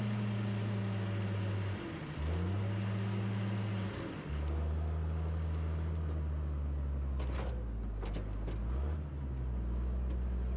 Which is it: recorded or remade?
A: recorded